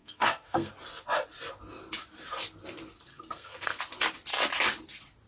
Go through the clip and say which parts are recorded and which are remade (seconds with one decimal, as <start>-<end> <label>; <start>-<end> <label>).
0.0-0.7 remade; 0.7-3.1 recorded; 3.1-3.8 remade; 3.8-5.3 recorded